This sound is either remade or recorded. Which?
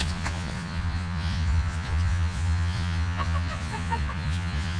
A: remade